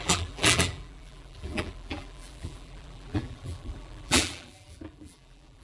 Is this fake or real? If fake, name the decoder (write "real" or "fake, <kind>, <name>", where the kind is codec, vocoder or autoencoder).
fake, vocoder, BigVGAN v2